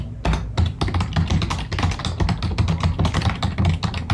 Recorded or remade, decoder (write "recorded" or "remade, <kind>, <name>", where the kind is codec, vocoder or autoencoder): recorded